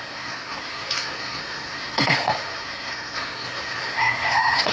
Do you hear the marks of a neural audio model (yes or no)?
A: yes